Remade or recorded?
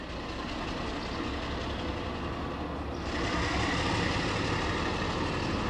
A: recorded